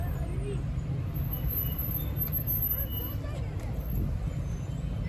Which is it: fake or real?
real